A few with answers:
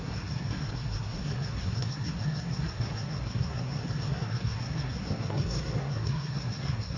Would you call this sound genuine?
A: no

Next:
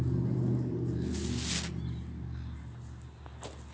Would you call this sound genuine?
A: yes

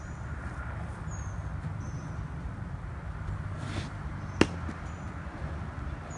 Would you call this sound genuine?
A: yes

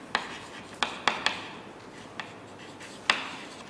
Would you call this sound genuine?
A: yes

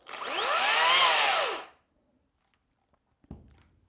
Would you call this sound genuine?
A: yes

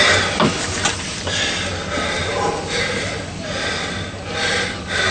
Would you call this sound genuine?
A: yes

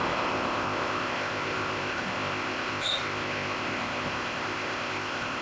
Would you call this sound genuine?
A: no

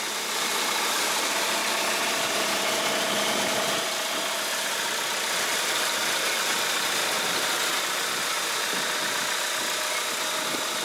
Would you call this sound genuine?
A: yes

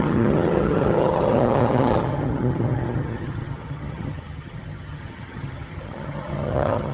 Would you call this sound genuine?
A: no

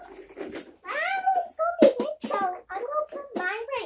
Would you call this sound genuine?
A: yes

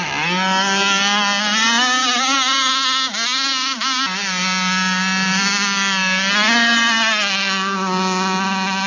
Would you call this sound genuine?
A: yes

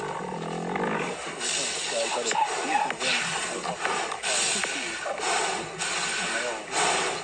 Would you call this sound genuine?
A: yes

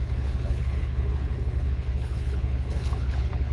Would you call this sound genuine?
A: no